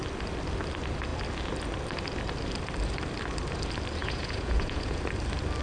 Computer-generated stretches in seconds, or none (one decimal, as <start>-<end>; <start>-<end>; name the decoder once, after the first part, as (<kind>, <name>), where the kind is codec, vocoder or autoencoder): 4.0-5.0 (vocoder, Vocos)